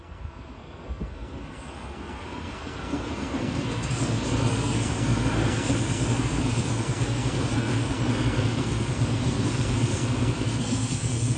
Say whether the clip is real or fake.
fake